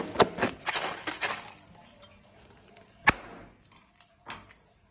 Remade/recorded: recorded